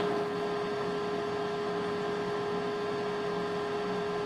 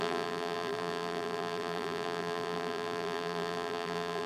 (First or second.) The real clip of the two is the first